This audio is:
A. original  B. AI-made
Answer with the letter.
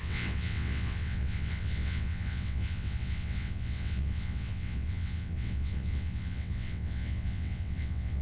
B